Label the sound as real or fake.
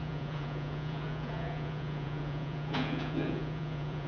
fake